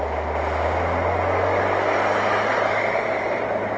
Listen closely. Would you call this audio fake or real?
real